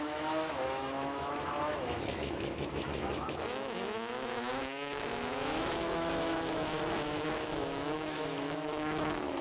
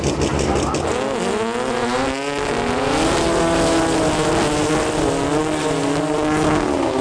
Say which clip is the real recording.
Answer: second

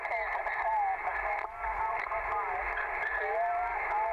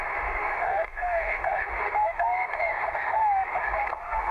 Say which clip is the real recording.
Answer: first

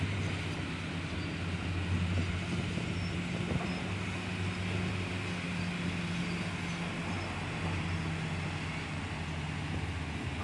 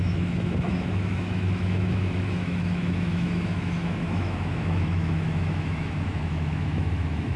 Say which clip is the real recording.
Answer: first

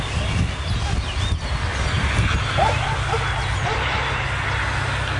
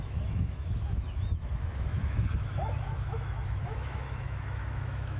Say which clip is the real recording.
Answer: first